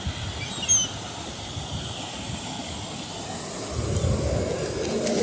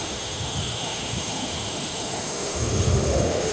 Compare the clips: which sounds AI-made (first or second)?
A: second